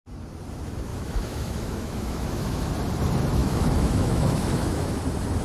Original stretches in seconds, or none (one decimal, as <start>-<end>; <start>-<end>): 0.0-0.9; 2.7-3.4; 5.0-5.4